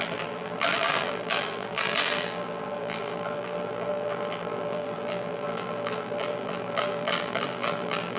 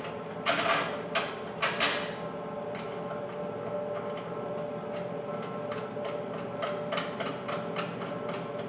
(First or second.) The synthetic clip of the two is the first